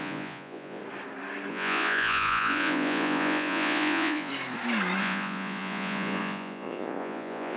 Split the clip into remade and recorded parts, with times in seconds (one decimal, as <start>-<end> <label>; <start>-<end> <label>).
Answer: 0.0-0.8 remade; 0.8-1.5 recorded; 1.5-4.3 remade; 4.3-5.0 recorded; 5.0-7.6 remade